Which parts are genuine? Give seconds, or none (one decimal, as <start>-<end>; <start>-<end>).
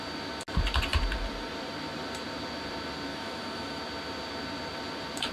0.0-3.1; 3.8-5.3